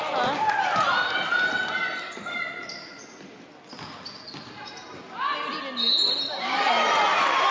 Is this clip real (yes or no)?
yes